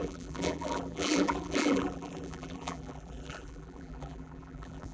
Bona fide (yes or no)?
no